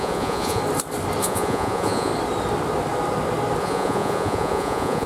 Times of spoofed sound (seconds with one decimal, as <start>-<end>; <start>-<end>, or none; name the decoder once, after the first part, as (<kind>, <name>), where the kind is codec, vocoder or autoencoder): 0.0-0.6 (vocoder, Vocos); 1.2-2.1; 3.6-5.1